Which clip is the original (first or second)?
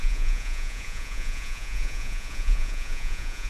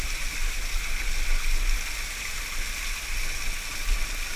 second